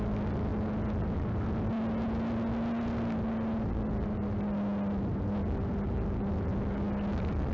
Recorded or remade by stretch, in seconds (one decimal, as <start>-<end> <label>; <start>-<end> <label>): 0.0-7.5 recorded